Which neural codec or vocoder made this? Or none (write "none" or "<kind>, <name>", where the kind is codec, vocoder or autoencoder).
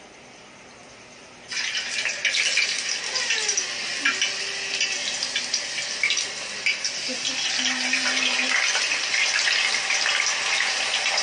none